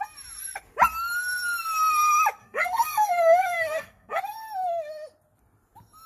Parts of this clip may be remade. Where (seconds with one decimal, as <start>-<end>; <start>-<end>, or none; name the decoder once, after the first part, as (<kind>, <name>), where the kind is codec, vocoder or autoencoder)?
2.4-4.2 (codec, SNAC)